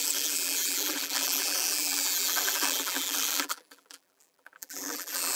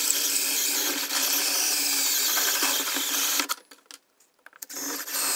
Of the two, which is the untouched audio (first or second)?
second